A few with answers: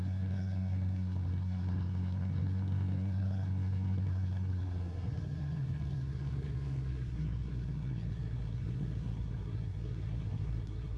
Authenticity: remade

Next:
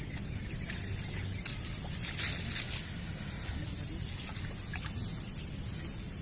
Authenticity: recorded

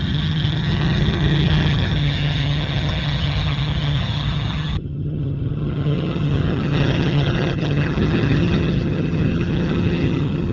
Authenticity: remade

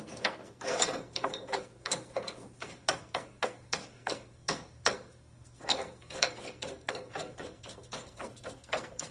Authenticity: remade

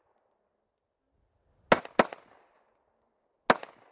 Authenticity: recorded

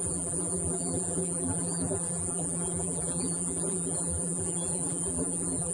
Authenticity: remade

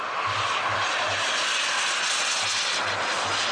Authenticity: recorded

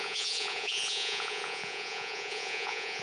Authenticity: remade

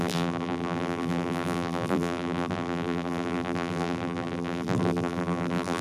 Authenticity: remade